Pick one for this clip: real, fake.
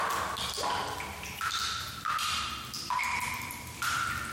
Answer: real